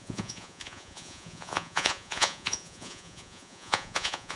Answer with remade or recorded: remade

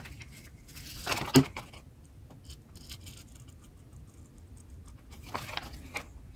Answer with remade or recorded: recorded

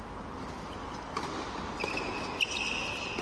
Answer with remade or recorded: recorded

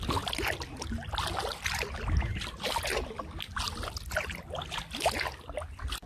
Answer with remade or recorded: recorded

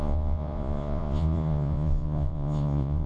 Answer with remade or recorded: remade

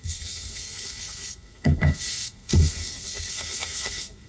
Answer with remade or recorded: remade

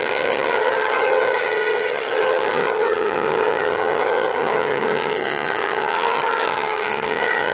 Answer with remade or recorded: remade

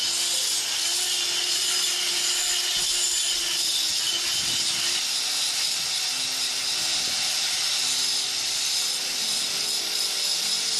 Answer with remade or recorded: recorded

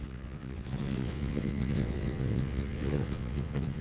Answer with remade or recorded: remade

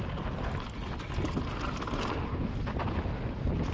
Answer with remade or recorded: recorded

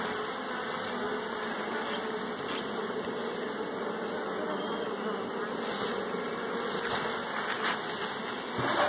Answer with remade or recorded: recorded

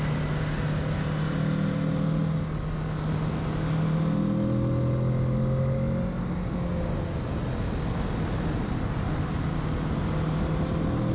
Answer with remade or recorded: recorded